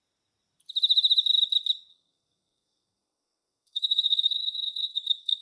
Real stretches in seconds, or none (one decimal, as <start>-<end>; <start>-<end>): 0.0-1.9